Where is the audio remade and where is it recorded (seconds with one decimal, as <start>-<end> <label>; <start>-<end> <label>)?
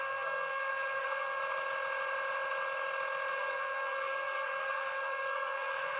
0.0-1.4 remade; 1.4-3.3 recorded; 3.3-6.0 remade